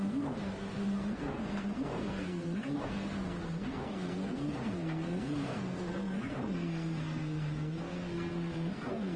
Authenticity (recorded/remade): remade